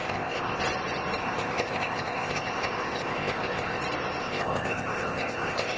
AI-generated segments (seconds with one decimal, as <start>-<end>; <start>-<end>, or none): 0.0-0.6; 1.2-3.8; 4.2-5.8

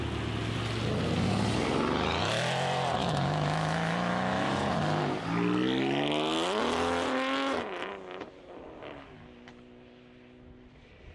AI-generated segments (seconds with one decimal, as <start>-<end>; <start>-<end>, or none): 3.0-4.5

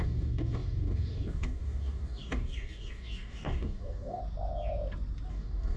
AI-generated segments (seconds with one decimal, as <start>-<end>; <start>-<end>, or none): 0.0-4.2; 5.3-5.8

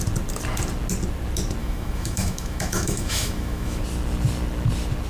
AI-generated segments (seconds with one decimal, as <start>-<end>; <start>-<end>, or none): 1.6-3.8

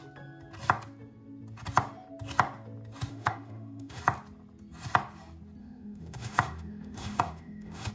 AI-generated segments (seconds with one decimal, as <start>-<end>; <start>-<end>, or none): 3.1-4.0; 5.6-7.9

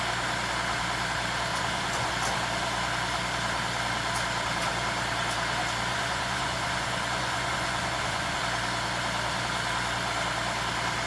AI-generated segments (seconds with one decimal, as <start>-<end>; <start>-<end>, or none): 1.5-2.1; 5.9-8.4

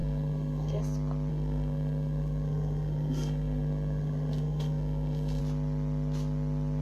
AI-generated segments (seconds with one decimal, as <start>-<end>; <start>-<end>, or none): 0.0-0.8; 1.3-5.4

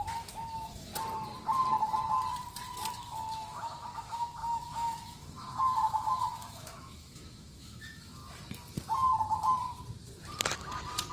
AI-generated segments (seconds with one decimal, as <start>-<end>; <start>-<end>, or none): 0.0-0.9; 2.9-8.2